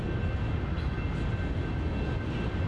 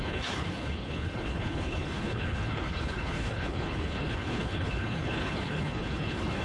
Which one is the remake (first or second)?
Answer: second